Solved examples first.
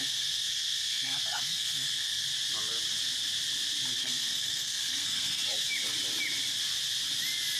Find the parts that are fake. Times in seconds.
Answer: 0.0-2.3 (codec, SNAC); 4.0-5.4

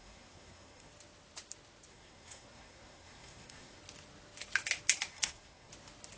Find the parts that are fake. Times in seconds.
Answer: 0.0-0.9 (codec, SNAC); 1.9-3.8; 5.1-5.7

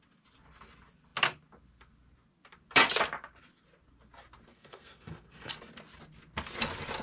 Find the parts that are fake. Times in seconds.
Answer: 4.5-5.5 (codec, SNAC)

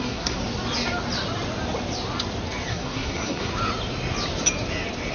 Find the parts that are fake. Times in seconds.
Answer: 0.0-0.4 (codec, SNAC); 2.7-3.5

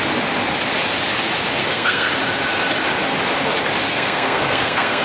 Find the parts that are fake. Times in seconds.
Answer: 1.6-2.1 (codec, SNAC); 3.9-5.0

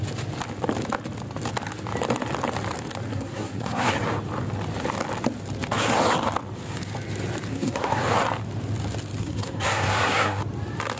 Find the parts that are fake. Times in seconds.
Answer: 3.1-3.9 (codec, SNAC); 7.5-8.0; 9.2-10.4

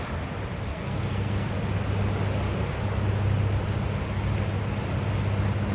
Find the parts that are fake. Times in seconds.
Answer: 0.7-1.5 (codec, SNAC)

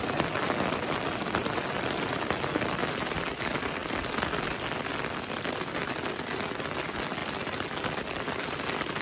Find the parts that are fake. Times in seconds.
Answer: none